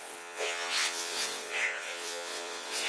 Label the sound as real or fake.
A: fake